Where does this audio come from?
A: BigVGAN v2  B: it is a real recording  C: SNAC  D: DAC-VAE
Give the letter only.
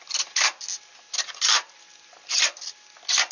B